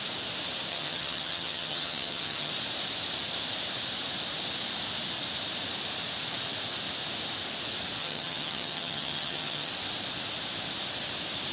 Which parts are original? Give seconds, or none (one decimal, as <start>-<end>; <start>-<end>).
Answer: 0.0-0.7; 2.5-8.0; 9.7-11.5